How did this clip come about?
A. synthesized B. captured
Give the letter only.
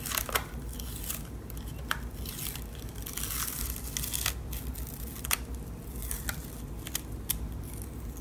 B